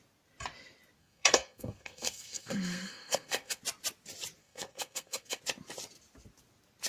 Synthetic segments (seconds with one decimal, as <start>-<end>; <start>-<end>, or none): 1.0-3.6; 4.4-5.4